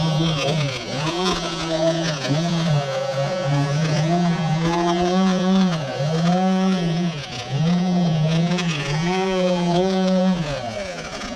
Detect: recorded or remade remade